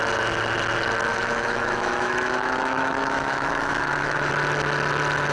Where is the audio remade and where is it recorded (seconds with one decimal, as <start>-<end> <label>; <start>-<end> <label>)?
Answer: 0.0-1.1 recorded; 1.1-4.3 remade; 4.3-5.3 recorded